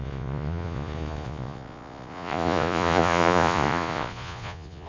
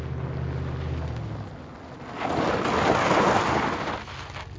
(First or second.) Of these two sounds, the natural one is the second